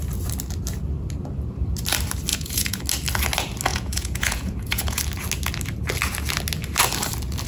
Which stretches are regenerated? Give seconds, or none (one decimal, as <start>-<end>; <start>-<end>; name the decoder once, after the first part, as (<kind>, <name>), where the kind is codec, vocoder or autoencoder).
2.3-2.8 (vocoder, Vocos); 3.7-5.0